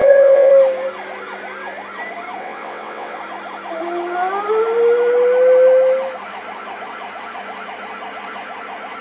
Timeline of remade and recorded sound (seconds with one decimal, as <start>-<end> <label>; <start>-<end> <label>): 0.0-0.5 remade; 0.5-2.4 recorded; 2.4-3.2 remade; 3.2-9.0 recorded